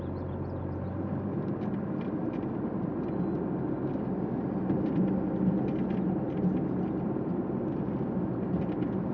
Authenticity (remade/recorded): recorded